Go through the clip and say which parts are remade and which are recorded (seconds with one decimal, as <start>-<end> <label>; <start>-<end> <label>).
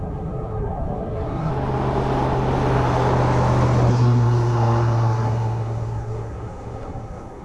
0.0-1.5 remade; 1.5-3.9 recorded; 3.9-7.4 remade